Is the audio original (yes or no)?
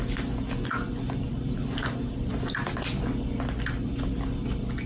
yes